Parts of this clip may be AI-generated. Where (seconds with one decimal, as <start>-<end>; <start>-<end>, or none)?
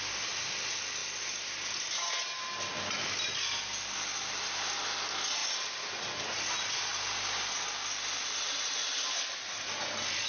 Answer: none